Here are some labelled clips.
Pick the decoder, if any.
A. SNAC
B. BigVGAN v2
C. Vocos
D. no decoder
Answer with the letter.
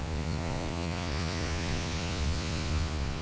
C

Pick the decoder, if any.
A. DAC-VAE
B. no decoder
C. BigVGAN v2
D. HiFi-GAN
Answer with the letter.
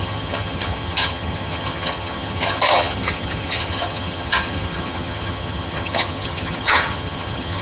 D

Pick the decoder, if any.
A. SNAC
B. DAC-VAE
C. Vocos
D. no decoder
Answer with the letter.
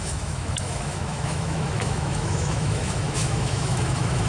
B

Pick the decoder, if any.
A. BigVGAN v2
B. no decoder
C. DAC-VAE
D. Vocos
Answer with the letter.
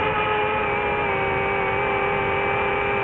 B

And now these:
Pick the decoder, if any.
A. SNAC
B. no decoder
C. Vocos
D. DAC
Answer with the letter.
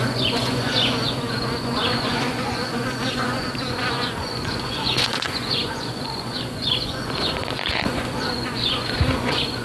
C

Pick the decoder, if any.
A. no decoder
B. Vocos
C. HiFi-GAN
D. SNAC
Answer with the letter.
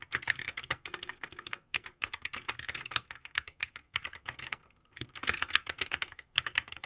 D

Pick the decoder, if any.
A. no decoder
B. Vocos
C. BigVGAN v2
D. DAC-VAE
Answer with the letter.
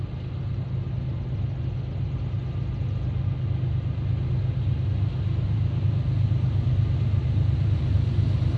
A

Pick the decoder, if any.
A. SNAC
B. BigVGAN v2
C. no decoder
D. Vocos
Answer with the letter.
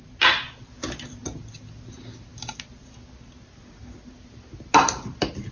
C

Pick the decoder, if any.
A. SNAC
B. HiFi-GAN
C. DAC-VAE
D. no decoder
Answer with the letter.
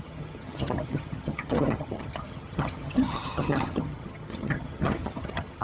B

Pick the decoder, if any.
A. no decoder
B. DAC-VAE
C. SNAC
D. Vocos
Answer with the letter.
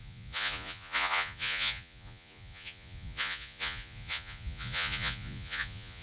D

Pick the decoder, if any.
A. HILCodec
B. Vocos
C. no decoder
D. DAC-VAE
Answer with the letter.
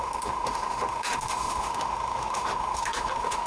D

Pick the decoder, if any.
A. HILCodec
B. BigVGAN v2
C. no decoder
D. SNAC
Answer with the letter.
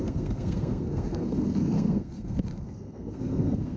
D